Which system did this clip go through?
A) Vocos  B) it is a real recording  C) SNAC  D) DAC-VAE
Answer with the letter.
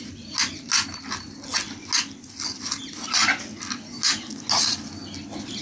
B